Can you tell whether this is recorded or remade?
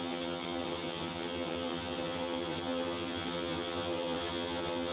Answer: remade